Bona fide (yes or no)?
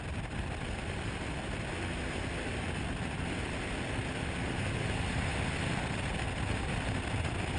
yes